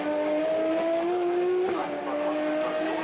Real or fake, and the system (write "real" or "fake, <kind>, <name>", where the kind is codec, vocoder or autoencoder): real